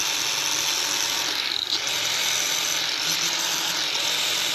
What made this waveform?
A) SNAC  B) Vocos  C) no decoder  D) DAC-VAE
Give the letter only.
C